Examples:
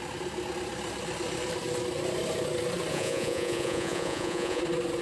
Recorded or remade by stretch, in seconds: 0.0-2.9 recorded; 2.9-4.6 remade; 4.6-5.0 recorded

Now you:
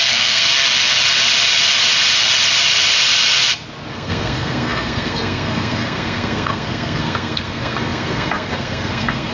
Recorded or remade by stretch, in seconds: 0.0-0.5 remade; 0.5-3.9 recorded; 3.9-9.3 remade